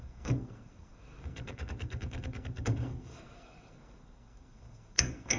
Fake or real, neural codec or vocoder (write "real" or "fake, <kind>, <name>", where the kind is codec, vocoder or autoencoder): fake, codec, SNAC